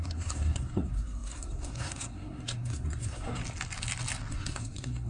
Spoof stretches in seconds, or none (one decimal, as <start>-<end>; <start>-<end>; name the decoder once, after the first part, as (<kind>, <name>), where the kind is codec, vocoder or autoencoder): 0.0-3.4 (codec, SNAC); 4.3-5.1

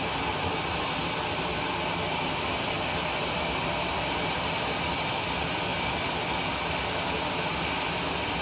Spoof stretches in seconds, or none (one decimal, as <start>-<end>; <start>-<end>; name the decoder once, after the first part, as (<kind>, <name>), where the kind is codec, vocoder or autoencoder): none

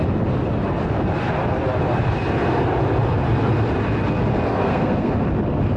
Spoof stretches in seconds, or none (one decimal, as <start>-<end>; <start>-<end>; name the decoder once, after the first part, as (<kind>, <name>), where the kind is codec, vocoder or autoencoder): 4.5-5.1 (codec, SNAC)